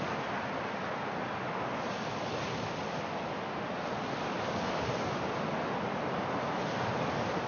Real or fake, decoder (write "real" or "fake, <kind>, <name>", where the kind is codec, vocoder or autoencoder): real